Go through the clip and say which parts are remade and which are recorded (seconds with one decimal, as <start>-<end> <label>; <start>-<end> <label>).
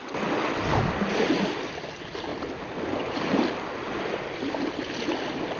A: 0.0-5.6 recorded